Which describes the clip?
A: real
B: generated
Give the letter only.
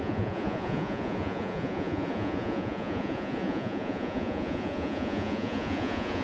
B